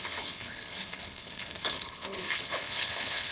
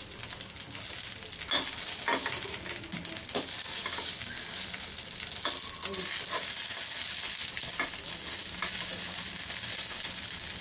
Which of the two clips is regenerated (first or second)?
first